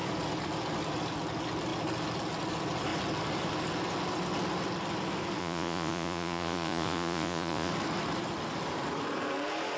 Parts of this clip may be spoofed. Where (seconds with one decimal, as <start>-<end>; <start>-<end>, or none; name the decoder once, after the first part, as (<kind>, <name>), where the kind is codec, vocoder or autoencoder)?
5.4-7.7 (vocoder, Vocos)